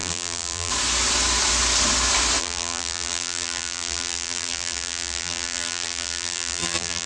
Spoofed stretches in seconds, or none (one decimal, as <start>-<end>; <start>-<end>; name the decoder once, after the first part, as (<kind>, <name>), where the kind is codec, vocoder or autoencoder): 0.0-0.7 (vocoder, BigVGAN v2); 2.4-7.1

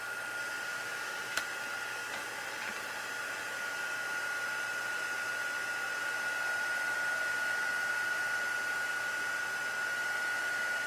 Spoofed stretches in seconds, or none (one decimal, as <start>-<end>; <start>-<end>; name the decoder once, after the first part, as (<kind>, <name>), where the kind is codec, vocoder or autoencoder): 0.7-1.4 (autoencoder, DAC-VAE)

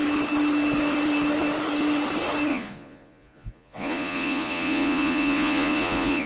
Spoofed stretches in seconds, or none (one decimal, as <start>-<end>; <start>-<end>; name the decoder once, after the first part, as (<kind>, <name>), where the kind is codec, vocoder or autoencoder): 2.5-6.3 (vocoder, Vocos)

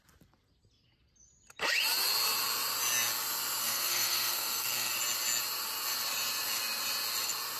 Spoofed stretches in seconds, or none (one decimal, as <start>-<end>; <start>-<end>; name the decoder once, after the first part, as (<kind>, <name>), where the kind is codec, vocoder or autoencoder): 3.6-4.9 (codec, SNAC)